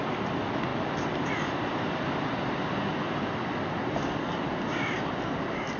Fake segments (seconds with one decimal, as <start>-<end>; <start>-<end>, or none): none